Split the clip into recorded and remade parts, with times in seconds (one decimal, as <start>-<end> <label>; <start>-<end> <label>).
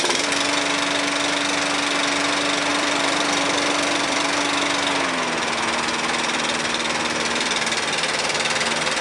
0.0-2.7 recorded; 2.7-4.4 remade; 4.4-9.0 recorded